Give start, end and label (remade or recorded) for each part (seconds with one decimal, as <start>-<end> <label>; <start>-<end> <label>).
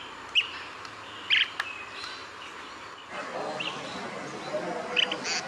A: 0.0-5.5 recorded